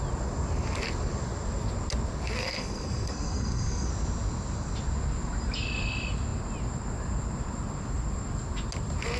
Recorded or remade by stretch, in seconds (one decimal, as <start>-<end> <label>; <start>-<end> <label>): 0.0-2.4 recorded; 2.4-3.9 remade; 3.9-9.2 recorded